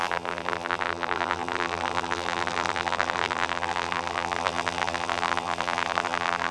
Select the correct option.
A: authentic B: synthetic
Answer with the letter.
B